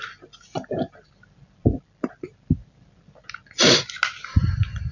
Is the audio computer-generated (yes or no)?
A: no